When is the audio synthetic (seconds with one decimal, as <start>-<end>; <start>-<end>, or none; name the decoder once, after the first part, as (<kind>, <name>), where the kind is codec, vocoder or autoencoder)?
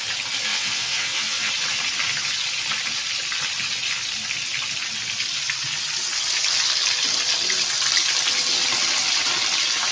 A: 0.5-1.5 (vocoder, WaveNeXt)